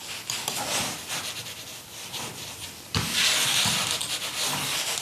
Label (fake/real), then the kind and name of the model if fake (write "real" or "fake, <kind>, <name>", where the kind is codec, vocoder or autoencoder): real